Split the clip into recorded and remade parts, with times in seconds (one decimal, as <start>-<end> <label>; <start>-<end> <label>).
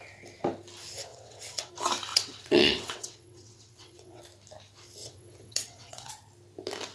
0.0-1.1 recorded; 1.1-1.7 remade; 1.7-2.1 recorded; 2.1-4.2 remade; 4.2-5.0 recorded; 5.0-6.1 remade; 6.1-6.9 recorded